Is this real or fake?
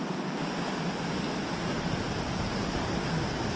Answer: real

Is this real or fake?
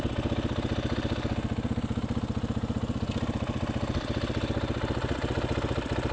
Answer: real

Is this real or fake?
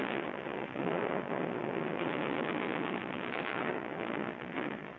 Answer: fake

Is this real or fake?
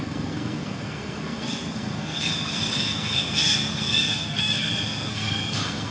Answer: fake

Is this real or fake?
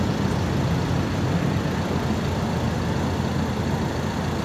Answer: real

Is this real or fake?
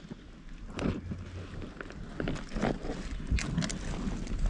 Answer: real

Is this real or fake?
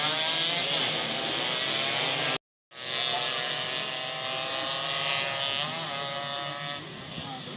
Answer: real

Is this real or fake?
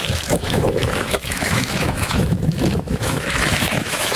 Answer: fake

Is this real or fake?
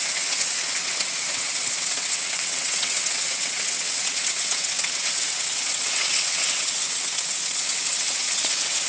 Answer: fake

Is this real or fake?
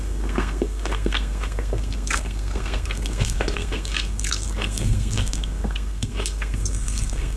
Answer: fake